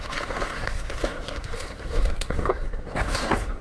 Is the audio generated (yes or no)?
yes